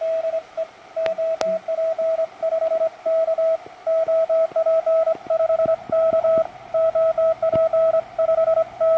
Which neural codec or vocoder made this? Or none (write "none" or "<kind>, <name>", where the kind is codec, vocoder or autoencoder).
none